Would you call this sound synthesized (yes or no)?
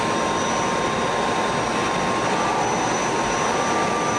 no